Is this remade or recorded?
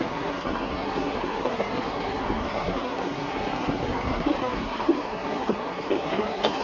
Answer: remade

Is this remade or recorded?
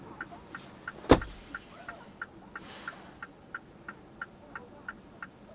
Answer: recorded